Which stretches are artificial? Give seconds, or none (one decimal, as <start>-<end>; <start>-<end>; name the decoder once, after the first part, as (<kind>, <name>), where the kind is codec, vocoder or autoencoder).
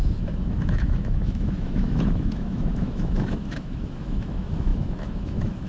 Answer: 0.0-5.7 (autoencoder, DAC-VAE)